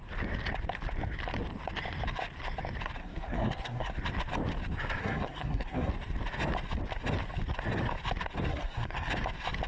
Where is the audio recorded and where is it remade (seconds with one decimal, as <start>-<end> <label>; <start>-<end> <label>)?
0.0-3.0 recorded; 3.0-3.9 remade; 3.9-5.0 recorded; 5.0-5.9 remade; 5.9-8.5 recorded; 8.5-9.1 remade; 9.1-9.7 recorded